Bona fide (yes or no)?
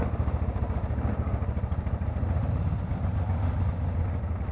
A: yes